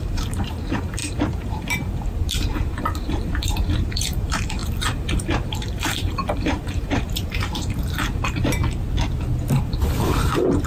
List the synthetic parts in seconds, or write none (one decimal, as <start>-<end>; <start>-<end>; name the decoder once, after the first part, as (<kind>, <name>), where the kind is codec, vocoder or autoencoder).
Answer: 0.0-8.6 (vocoder, BigVGAN v2); 9.6-10.7